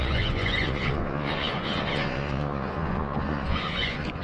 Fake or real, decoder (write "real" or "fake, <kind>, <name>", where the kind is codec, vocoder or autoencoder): fake, vocoder, Vocos